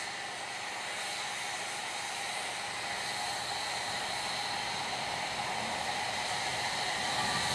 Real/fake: real